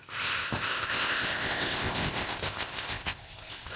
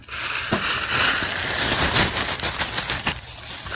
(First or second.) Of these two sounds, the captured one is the second